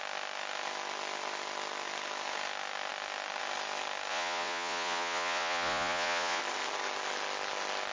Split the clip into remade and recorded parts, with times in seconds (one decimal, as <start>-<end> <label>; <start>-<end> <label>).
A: 0.0-4.1 recorded; 4.1-6.4 remade; 6.4-7.9 recorded